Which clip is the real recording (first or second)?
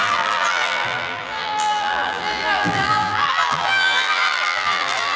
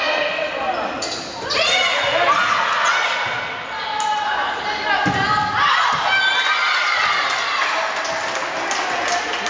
second